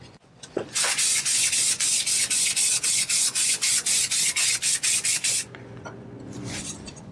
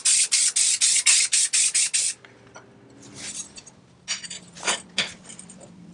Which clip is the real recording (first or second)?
second